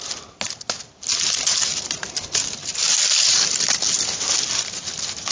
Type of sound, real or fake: real